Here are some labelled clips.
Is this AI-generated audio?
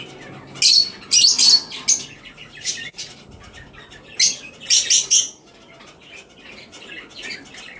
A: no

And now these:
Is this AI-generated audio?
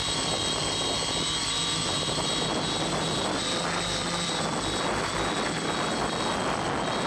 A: no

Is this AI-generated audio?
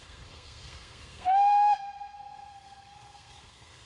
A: yes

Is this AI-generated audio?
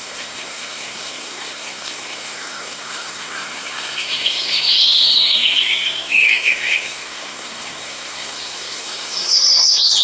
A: yes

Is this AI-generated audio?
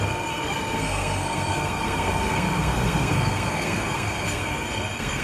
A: yes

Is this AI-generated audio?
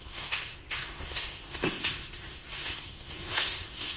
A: yes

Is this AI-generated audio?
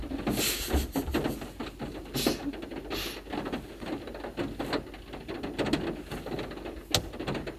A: no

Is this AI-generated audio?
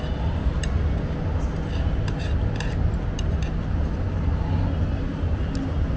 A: no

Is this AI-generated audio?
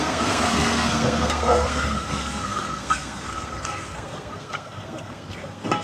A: yes